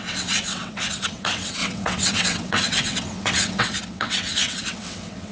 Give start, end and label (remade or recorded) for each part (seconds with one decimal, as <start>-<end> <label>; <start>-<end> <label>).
0.0-5.3 remade